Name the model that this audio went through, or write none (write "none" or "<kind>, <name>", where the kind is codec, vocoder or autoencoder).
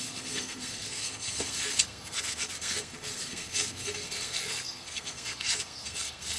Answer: codec, SNAC